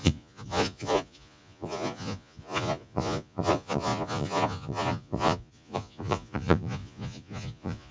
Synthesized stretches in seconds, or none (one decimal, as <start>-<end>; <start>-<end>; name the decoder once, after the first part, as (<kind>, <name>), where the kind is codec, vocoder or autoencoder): 0.0-7.9 (vocoder, Vocos)